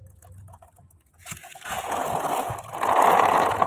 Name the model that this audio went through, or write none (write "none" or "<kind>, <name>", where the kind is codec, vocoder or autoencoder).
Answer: vocoder, Vocos